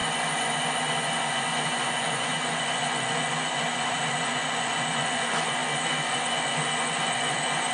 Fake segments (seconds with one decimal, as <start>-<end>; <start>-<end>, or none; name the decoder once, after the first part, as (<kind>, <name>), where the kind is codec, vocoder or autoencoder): 0.0-7.7 (vocoder, Vocos)